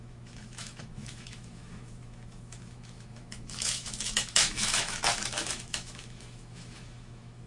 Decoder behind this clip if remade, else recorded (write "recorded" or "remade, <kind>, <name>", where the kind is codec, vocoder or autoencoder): remade, autoencoder, DAC-VAE